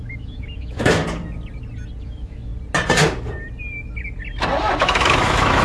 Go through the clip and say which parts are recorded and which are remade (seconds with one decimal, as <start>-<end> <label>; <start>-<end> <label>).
0.0-1.0 remade; 1.0-2.0 recorded; 2.0-2.5 remade; 2.5-4.8 recorded; 4.8-5.6 remade

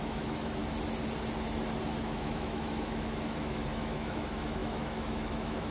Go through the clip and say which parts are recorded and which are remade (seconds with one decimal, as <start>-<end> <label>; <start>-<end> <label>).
0.0-0.6 remade; 0.6-2.0 recorded; 2.0-5.7 remade